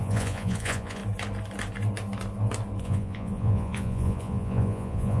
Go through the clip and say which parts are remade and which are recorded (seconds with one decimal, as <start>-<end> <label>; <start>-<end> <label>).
0.0-1.0 remade; 1.0-2.8 recorded; 2.8-5.2 remade